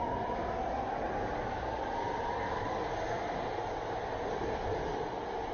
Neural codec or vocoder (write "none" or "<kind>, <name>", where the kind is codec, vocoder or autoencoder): none